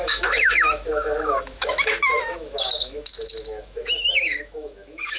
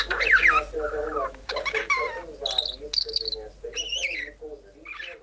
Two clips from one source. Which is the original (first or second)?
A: second